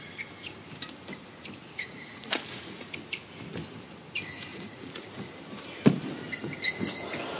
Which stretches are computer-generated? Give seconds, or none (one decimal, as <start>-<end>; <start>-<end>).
1.6-2.9; 4.5-5.3